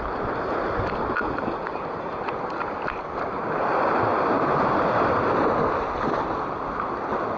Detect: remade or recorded recorded